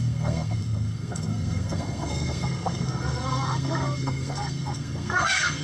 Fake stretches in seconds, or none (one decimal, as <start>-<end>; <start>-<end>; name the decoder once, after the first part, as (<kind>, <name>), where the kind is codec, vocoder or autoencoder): 0.0-5.6 (codec, SNAC)